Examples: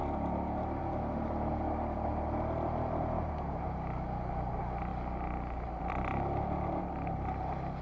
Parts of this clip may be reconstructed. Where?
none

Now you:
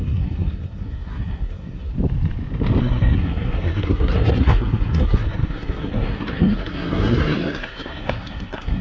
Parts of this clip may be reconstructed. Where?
0.0-1.9 (codec, SNAC); 2.8-8.8

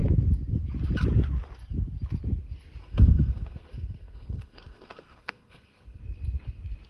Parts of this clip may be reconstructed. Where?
2.8-6.0 (codec, SNAC)